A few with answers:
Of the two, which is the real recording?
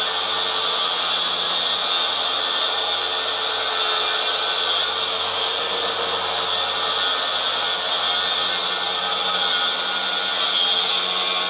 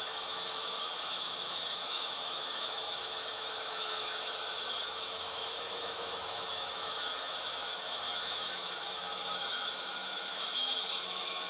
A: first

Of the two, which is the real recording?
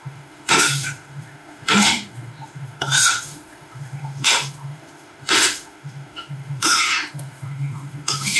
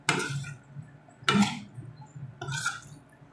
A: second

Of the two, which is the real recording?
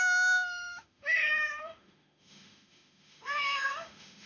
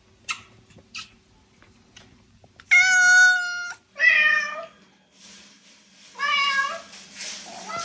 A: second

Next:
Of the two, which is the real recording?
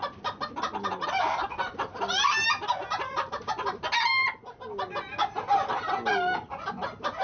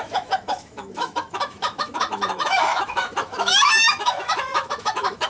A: first